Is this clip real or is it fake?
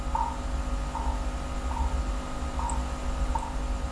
real